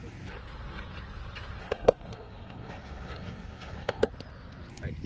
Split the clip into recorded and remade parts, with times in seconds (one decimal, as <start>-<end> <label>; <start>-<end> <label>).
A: 0.0-1.6 recorded; 1.6-4.1 remade; 4.1-5.1 recorded

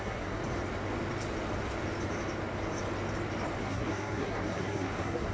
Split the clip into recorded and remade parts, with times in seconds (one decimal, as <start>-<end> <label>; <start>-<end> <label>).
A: 0.0-0.4 remade; 0.4-3.6 recorded; 3.6-5.3 remade

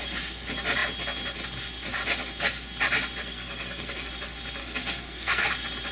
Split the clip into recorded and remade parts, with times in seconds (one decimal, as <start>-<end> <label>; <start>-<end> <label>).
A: 0.0-3.2 recorded; 3.2-4.1 remade; 4.1-4.6 recorded; 4.6-5.5 remade; 5.5-5.9 recorded